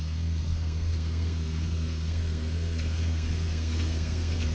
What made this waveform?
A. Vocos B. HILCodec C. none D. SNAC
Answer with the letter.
D